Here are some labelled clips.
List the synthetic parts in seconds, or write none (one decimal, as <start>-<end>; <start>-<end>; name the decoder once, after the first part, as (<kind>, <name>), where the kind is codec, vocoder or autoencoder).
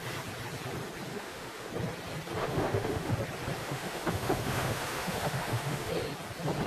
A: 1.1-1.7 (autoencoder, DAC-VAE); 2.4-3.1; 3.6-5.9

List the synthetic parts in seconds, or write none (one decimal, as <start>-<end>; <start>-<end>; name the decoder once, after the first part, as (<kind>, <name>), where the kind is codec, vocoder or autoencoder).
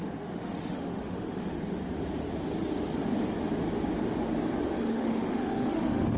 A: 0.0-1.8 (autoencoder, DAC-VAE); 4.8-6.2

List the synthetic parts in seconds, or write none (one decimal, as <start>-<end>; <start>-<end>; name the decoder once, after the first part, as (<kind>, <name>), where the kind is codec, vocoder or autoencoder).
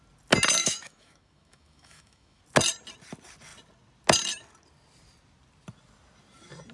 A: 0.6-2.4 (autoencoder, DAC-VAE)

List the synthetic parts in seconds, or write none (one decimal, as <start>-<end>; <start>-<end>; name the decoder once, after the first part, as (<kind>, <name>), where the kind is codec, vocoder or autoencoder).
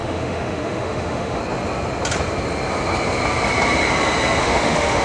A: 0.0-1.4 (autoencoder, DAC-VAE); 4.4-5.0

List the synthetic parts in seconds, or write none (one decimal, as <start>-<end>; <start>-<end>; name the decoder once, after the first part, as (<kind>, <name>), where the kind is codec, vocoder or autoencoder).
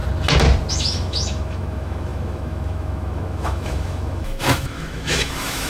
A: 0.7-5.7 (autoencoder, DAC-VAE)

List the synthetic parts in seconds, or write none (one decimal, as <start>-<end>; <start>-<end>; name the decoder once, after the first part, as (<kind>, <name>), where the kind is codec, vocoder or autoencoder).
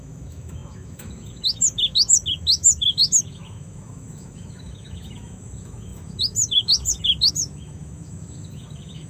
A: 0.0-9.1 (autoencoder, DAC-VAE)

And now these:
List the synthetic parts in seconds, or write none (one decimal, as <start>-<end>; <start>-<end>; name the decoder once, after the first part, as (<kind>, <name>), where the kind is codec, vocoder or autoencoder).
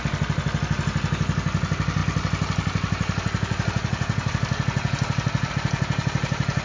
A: none